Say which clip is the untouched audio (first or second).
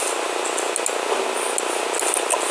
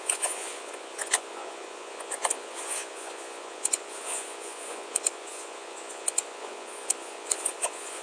first